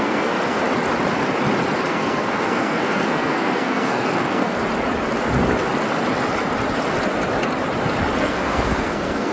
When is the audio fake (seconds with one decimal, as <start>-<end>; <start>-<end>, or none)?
0.0-0.6; 1.9-4.6; 8.2-9.3